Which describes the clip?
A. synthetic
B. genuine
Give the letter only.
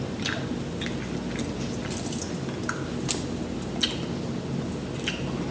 B